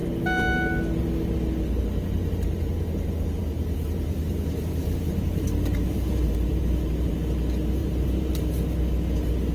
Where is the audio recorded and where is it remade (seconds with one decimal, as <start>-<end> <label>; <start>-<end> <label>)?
0.0-3.4 recorded; 3.4-7.1 remade; 7.1-7.8 recorded; 7.8-8.3 remade; 8.3-9.5 recorded

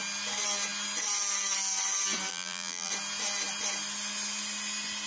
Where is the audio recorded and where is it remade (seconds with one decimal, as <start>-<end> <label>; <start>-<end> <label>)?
0.0-2.3 recorded; 2.3-2.9 remade; 2.9-5.1 recorded

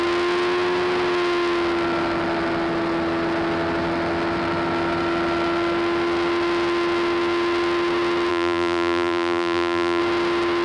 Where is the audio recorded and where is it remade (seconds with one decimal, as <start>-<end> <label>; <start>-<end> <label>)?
0.0-8.3 recorded; 8.3-10.0 remade; 10.0-10.6 recorded

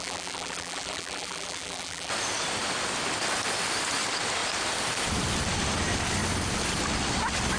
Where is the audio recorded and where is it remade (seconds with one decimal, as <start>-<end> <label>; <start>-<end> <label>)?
0.0-2.1 remade; 2.1-7.6 recorded

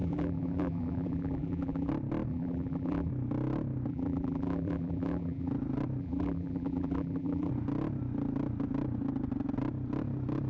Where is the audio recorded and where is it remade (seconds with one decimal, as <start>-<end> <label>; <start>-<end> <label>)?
0.0-1.9 remade; 1.9-2.3 recorded; 2.3-3.1 remade; 3.1-3.9 recorded; 3.9-5.5 remade; 5.5-6.0 recorded; 6.0-7.5 remade; 7.5-10.5 recorded

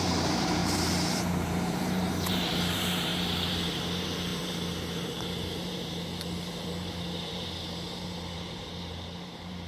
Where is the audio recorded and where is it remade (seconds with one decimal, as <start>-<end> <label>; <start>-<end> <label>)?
0.0-9.7 remade